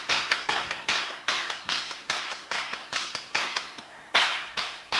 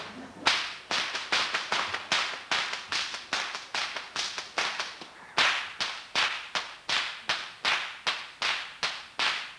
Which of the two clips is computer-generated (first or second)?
first